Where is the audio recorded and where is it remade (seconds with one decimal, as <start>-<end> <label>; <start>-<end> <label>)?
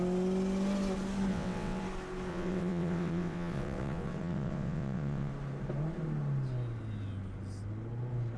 0.0-1.3 recorded; 1.3-1.8 remade; 1.8-2.3 recorded; 2.3-5.3 remade; 5.3-8.4 recorded